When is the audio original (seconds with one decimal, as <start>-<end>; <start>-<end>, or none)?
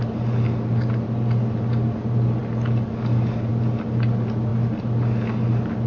0.0-5.9